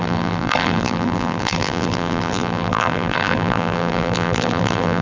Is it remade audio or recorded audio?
remade